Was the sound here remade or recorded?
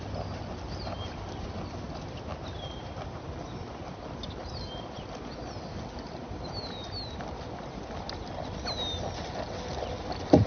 recorded